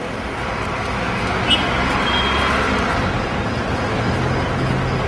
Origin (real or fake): real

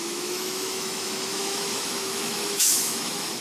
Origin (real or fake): fake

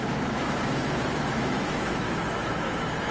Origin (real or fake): fake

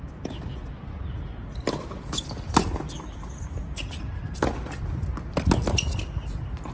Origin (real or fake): real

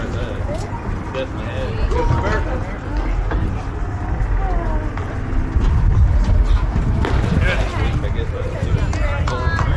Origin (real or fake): real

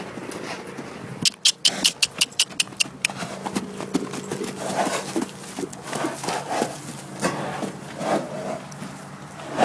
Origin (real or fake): real